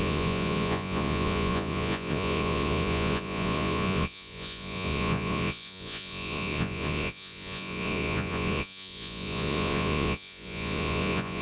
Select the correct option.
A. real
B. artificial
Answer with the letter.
B